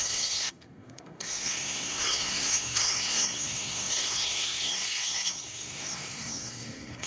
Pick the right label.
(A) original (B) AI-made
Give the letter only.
B